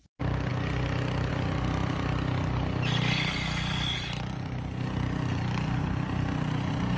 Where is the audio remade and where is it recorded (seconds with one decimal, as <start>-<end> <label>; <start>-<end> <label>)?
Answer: 0.0-7.0 recorded